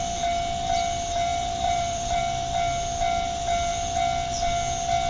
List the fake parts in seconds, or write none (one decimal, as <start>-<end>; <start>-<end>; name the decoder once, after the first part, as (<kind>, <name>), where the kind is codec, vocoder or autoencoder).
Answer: 1.3-2.2 (vocoder, BigVGAN v2)